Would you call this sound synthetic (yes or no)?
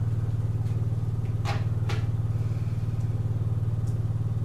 no